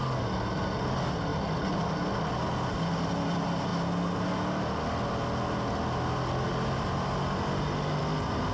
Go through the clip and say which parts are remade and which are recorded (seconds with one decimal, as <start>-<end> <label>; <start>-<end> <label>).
0.0-8.5 recorded